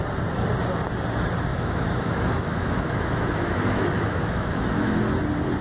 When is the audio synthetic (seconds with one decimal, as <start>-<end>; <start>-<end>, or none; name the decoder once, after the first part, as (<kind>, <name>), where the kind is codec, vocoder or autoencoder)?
1.5-4.9 (autoencoder, DAC-VAE)